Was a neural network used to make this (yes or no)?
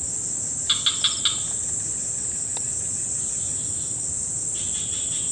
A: no